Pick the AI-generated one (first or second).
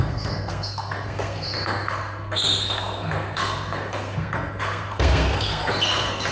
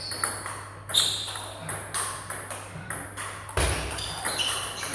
first